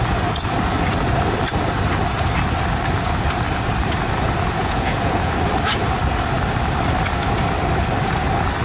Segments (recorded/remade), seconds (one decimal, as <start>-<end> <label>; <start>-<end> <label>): 0.0-4.6 recorded; 4.6-5.3 remade; 5.3-8.6 recorded